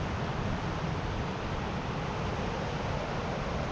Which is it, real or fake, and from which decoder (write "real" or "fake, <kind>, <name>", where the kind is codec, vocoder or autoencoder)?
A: real